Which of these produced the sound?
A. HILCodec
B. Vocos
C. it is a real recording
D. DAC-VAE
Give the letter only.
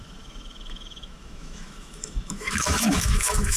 D